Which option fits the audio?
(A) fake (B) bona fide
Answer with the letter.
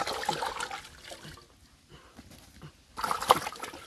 B